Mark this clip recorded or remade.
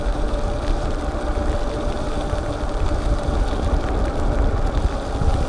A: recorded